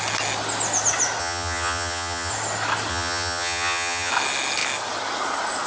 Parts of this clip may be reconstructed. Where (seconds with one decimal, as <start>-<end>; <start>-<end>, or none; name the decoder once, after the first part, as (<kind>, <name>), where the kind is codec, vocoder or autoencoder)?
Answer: 1.2-2.3 (vocoder, HiFi-GAN); 2.9-4.1